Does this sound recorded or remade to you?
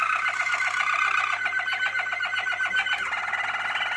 recorded